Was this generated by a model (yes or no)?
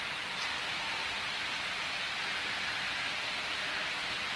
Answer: no